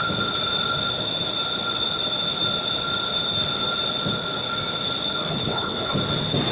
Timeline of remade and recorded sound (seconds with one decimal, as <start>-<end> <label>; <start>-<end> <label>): 0.0-5.3 recorded; 5.3-5.9 remade; 5.9-6.5 recorded